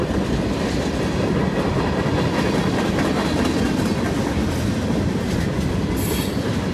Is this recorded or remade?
recorded